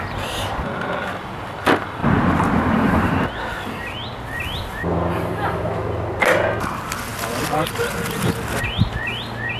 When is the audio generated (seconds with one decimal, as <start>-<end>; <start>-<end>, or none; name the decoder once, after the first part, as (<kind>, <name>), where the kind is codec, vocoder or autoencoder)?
2.0-3.1 (vocoder, BigVGAN v2)